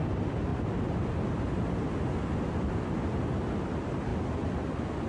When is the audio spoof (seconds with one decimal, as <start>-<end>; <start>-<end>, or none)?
none